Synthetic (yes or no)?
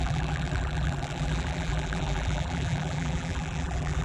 yes